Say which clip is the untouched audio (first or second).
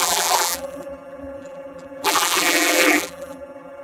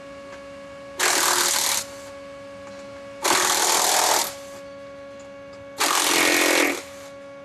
second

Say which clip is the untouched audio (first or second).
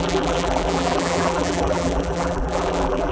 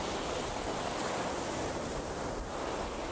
second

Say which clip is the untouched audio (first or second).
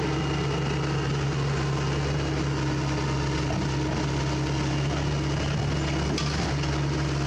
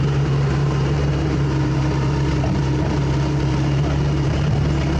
first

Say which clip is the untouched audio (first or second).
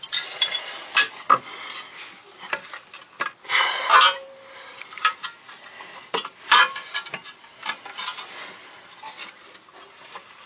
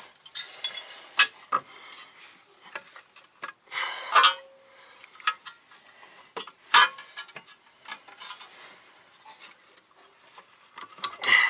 second